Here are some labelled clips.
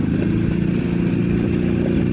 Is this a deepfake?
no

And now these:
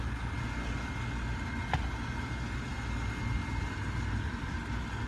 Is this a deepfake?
no